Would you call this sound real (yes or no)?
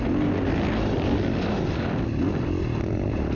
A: yes